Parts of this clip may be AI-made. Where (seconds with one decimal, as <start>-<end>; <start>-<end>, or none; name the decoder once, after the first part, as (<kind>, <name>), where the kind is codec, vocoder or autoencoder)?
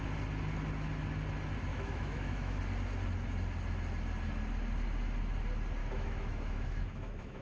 1.7-2.6 (autoencoder, DAC-VAE); 5.8-7.4